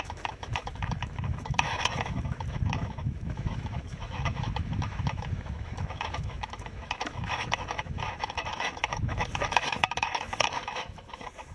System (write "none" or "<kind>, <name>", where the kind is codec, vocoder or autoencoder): autoencoder, DAC-VAE